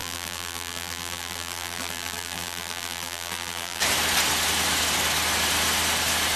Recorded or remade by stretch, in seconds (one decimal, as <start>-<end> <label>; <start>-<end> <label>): 0.0-3.8 remade; 3.8-6.4 recorded